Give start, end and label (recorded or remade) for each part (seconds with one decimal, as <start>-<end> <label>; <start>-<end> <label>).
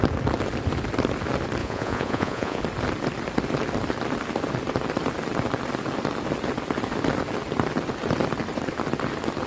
0.0-1.6 recorded; 1.6-2.6 remade; 2.6-9.5 recorded